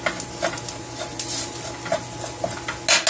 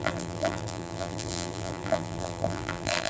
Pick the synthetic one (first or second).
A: second